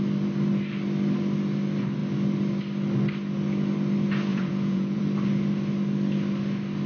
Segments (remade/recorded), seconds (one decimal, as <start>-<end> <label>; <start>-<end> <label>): 0.0-4.3 recorded; 4.3-5.0 remade; 5.0-6.9 recorded